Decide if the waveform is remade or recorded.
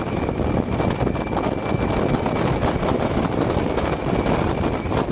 recorded